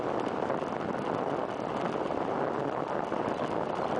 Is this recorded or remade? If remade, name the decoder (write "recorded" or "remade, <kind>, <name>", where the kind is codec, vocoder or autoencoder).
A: recorded